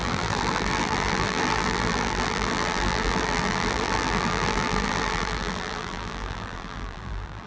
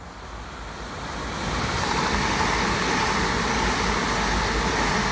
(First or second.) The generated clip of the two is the first